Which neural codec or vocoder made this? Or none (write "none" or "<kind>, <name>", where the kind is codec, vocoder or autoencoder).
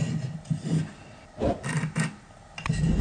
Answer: none